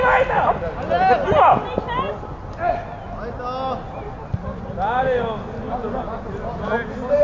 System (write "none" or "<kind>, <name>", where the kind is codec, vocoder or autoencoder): none